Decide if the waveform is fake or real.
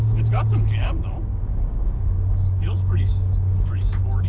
fake